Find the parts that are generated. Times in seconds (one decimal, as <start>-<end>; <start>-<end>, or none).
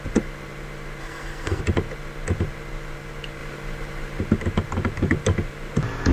1.0-1.6